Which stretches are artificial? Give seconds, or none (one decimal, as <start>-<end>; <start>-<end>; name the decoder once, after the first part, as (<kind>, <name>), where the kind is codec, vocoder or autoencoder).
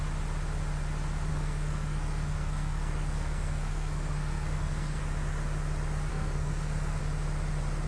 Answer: 1.3-5.0 (codec, SNAC); 6.1-7.0